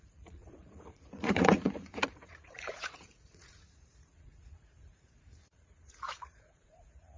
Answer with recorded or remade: remade